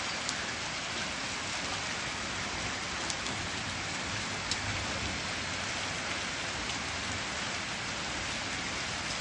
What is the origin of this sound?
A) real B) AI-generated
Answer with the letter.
A